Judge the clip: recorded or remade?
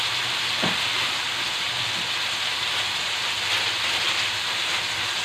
recorded